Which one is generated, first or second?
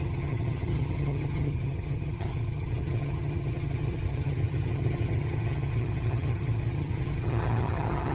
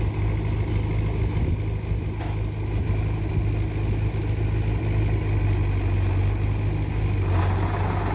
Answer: first